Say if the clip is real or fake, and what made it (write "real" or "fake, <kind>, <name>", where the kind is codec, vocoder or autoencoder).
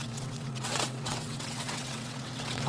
fake, vocoder, WaveNeXt